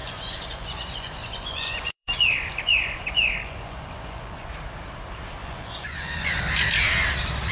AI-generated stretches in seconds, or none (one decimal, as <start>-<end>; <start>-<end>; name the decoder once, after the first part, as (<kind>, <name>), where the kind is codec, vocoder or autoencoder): 0.0-4.5 (vocoder, Vocos); 5.4-6.4